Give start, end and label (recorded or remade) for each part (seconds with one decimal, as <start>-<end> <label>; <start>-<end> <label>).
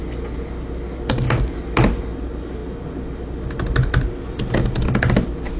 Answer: 0.0-5.6 recorded